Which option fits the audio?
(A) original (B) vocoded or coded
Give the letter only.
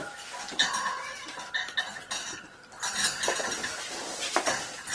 A